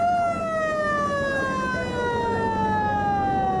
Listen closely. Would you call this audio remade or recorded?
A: recorded